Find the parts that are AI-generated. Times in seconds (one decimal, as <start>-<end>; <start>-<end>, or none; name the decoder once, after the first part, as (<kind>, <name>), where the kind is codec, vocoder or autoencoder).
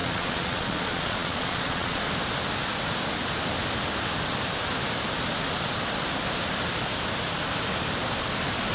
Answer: 0.0-2.0 (vocoder, Vocos)